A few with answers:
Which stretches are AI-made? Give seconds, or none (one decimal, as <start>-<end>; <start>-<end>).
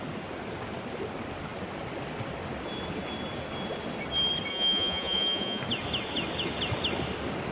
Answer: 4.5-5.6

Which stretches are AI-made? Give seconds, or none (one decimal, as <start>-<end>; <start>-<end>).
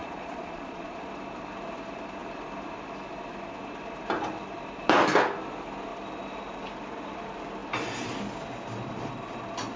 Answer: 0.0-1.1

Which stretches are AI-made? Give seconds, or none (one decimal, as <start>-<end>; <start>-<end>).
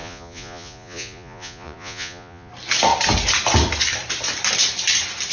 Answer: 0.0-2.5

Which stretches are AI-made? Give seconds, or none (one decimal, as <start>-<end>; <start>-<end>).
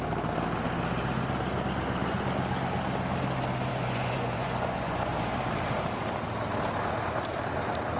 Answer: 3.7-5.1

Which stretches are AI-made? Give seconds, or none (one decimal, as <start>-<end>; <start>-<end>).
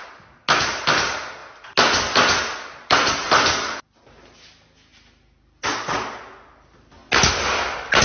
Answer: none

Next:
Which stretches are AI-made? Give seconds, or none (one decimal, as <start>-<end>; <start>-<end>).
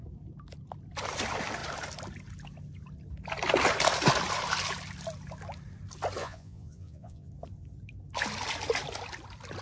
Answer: 6.2-7.3